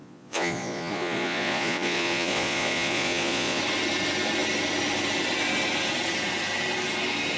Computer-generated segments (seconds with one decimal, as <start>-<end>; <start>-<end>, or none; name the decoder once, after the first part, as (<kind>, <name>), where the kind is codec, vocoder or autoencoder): 0.0-3.6 (vocoder, Vocos)